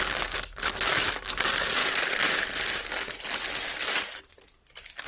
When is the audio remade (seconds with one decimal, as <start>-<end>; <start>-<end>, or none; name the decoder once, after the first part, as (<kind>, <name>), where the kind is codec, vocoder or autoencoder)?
0.0-1.8 (codec, DAC)